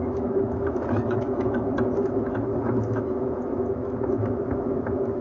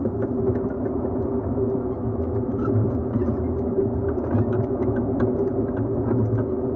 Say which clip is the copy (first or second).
first